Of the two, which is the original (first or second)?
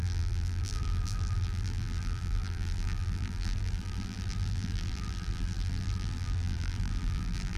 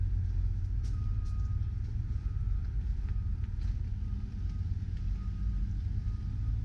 second